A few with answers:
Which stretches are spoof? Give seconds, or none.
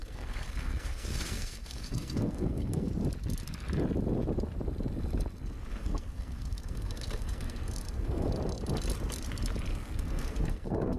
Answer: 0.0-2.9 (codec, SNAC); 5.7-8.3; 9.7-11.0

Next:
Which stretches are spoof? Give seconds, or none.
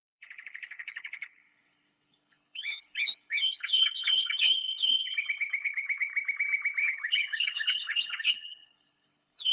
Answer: 0.0-6.1 (codec, HILCodec); 6.8-9.5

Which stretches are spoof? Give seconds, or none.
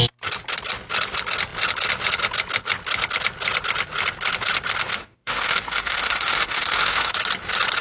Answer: 5.0-7.1 (autoencoder, DAC-VAE)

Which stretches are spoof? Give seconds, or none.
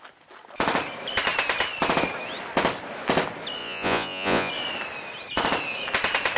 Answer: 3.6-4.5 (vocoder, Vocos)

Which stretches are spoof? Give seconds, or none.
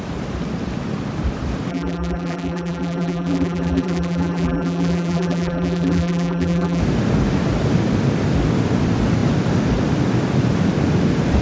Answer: 1.7-6.8 (vocoder, BigVGAN v2)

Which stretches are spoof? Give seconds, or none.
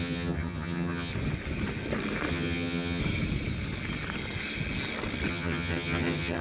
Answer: 0.0-1.1 (vocoder, HiFi-GAN); 2.3-3.0; 5.3-6.4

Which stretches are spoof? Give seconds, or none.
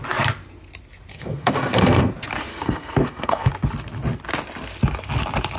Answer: 1.1-2.1 (codec, SNAC); 2.5-3.5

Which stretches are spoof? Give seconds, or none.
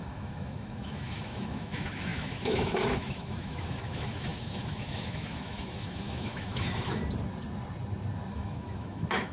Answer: 0.0-7.0 (autoencoder, DAC-VAE); 8.3-9.3